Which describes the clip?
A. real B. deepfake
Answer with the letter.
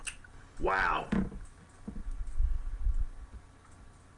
A